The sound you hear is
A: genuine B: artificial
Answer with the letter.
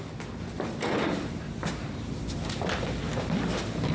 A